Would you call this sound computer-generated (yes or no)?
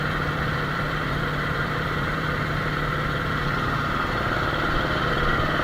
yes